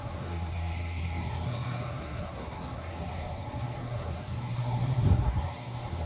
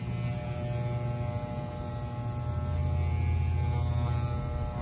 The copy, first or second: first